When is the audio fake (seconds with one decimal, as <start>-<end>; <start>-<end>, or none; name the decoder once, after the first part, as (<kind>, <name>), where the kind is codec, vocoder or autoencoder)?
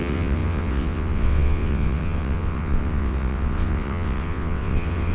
0.0-5.1 (vocoder, WaveNeXt)